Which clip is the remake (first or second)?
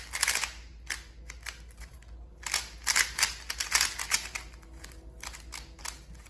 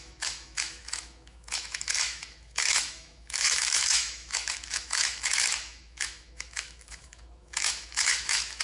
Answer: second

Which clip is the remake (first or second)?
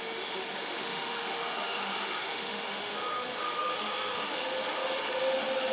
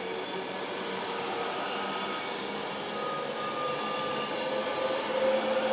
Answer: first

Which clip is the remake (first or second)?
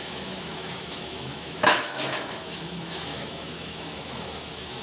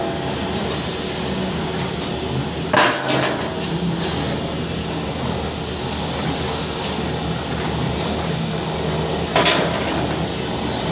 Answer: first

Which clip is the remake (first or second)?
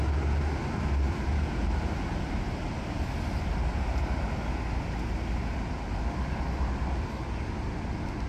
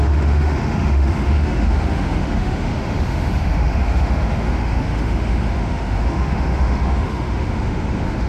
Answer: second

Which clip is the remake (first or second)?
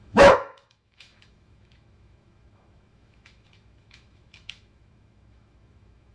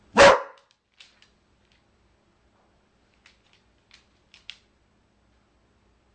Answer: first